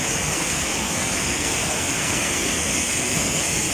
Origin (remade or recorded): remade